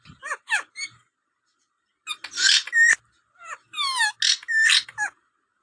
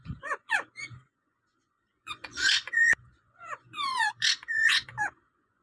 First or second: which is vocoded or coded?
second